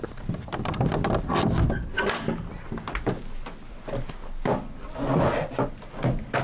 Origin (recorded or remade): recorded